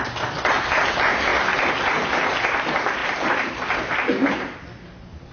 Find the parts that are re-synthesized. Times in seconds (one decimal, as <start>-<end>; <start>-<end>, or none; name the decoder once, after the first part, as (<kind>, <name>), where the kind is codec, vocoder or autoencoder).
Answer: none

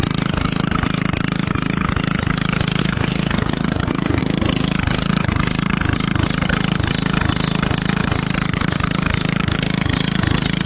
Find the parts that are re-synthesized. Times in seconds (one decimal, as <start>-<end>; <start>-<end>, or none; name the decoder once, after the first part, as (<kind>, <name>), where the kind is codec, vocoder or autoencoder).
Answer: 2.8-4.2 (codec, SNAC)

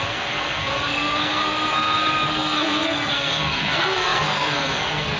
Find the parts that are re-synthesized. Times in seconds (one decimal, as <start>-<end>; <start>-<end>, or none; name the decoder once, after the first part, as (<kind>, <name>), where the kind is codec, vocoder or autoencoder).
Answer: 0.0-5.2 (codec, SNAC)

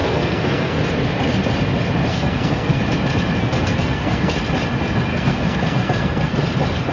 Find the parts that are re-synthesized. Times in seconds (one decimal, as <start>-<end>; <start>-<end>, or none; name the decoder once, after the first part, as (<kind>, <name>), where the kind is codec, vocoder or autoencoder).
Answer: 0.0-0.8 (codec, SNAC); 2.1-2.8; 3.4-4.3; 5.1-6.4